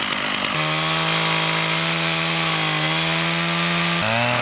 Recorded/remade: recorded